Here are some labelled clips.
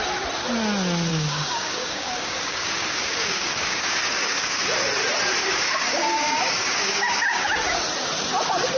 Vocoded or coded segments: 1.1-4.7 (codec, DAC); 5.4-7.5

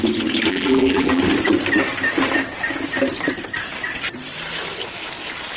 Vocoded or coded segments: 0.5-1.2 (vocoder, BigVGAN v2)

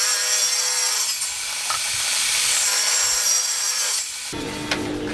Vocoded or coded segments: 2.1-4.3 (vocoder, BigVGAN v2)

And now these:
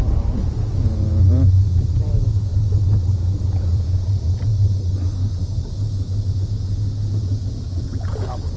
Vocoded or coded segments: 0.0-2.5 (vocoder, Vocos); 3.1-4.5; 6.3-8.6

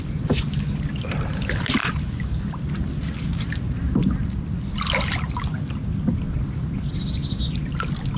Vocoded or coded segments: none

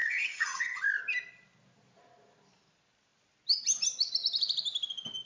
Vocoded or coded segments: 0.0-0.8 (vocoder, HiFi-GAN)